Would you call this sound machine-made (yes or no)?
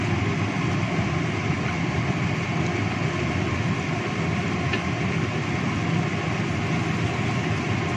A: no